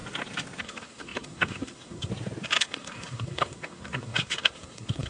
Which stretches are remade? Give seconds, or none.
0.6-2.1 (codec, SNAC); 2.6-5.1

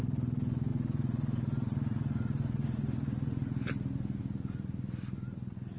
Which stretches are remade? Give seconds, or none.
none

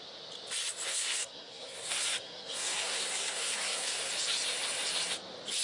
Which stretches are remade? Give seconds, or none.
0.9-4.1 (codec, SNAC)

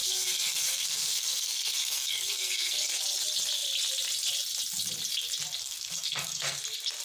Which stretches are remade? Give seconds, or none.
0.0-3.0 (codec, SNAC); 5.6-6.6